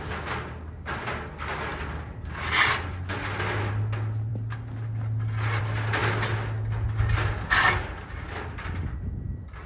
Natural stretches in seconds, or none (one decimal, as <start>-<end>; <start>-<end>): 0.0-9.7